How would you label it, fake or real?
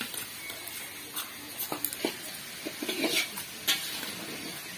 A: real